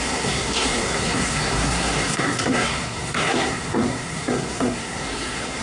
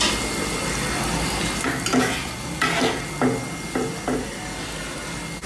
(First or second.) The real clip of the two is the second